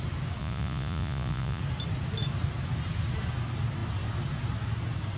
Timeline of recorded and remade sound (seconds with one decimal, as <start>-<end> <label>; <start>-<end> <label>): 0.0-0.4 recorded; 0.4-1.6 remade; 1.6-5.2 recorded